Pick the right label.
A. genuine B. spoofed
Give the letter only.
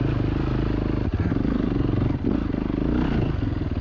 A